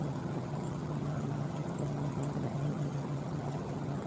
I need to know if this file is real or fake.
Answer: fake